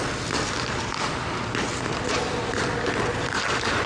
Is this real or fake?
real